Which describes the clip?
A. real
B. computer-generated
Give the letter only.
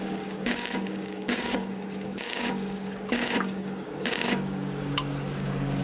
B